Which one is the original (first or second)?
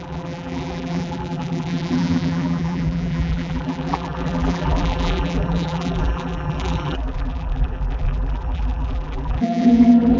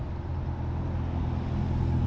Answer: second